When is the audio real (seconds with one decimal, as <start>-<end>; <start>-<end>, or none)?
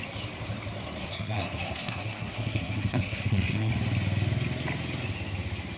0.0-1.0; 3.7-5.8